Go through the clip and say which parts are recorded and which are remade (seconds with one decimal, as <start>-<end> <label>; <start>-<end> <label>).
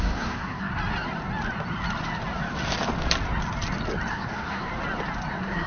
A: 0.0-0.7 remade; 0.7-4.1 recorded; 4.1-4.7 remade; 4.7-5.3 recorded; 5.3-5.7 remade